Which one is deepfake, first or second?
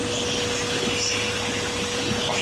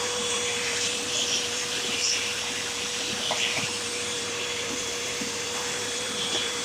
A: second